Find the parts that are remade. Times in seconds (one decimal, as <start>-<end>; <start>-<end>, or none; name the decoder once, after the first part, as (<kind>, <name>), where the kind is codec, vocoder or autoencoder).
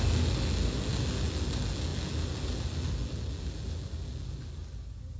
none